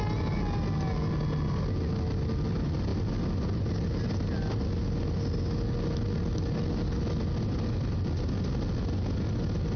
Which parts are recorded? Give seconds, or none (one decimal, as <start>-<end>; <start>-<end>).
0.0-9.8